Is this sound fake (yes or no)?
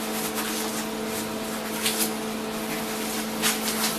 no